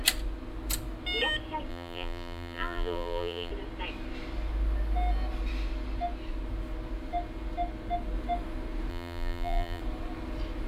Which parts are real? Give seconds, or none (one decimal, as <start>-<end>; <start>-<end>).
0.0-1.7; 3.5-8.9; 9.8-10.7